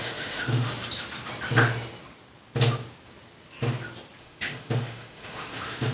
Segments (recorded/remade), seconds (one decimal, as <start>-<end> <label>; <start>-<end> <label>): 0.0-0.7 remade; 0.7-4.2 recorded; 4.2-5.9 remade